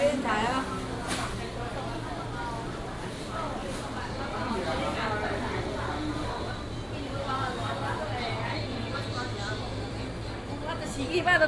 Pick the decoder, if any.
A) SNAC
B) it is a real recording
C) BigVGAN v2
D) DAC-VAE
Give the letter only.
B